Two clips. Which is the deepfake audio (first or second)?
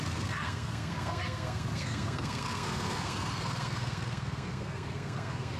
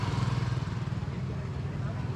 first